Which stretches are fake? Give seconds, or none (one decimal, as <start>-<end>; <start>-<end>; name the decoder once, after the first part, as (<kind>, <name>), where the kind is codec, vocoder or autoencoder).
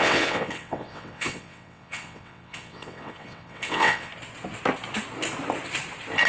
0.0-4.1 (vocoder, WaveNeXt)